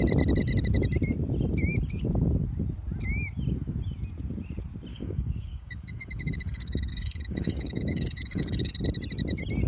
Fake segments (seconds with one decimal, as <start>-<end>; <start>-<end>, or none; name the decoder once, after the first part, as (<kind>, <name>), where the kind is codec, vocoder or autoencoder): 4.9-8.8 (codec, DAC)